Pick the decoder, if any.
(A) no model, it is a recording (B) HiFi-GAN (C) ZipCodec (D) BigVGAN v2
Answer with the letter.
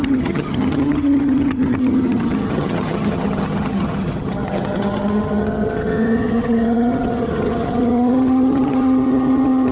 B